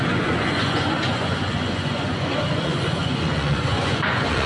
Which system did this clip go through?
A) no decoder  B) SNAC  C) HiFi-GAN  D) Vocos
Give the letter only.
D